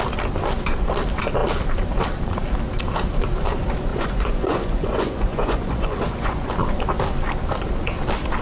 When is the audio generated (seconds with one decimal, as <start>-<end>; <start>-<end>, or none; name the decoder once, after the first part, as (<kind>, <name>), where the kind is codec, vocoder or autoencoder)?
3.9-6.5 (vocoder, Vocos)